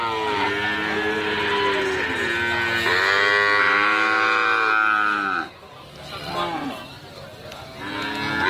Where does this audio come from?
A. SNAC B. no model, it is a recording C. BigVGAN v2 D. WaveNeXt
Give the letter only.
B